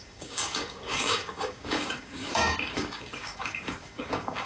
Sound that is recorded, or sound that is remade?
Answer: remade